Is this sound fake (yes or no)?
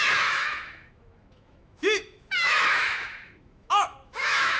yes